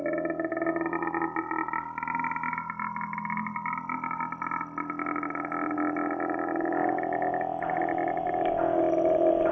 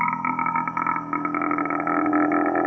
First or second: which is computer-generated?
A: second